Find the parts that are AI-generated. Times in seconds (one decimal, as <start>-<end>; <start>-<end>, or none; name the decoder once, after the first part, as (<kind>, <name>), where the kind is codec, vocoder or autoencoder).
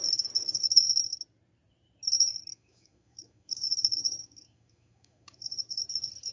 2.5-5.8 (autoencoder, DAC-VAE)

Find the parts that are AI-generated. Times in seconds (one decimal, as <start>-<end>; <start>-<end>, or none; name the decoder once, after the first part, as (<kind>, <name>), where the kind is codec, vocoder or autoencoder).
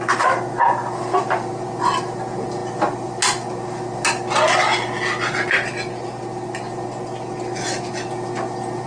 none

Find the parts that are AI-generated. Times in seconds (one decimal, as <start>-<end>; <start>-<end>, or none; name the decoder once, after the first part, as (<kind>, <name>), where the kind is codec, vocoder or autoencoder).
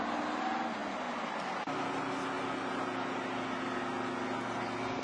none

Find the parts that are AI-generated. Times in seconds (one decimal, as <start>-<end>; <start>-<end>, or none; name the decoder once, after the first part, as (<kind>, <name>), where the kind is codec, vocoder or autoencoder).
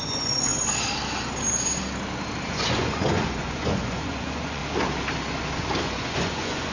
0.0-0.5 (vocoder, Vocos); 2.5-4.6; 5.8-6.7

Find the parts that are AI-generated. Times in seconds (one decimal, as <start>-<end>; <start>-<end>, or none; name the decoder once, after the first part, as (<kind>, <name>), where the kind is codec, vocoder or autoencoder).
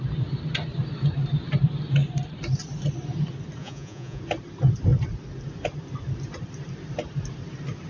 3.6-4.2 (vocoder, Vocos)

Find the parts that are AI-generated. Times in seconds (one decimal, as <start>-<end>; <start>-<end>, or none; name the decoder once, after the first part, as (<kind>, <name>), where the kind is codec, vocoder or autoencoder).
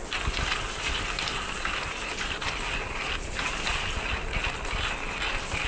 none